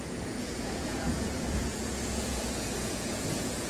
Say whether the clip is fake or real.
fake